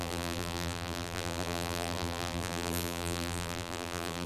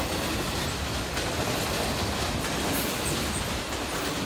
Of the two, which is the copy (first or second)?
first